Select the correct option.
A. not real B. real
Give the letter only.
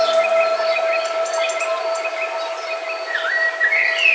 B